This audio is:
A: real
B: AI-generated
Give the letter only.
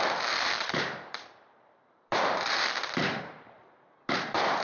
B